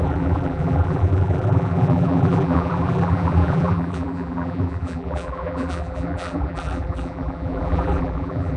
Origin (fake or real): fake